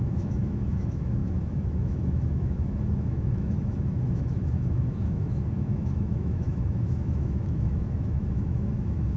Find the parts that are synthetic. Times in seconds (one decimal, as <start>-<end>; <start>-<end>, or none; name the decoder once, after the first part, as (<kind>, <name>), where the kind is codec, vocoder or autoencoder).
0.0-9.2 (autoencoder, DAC-VAE)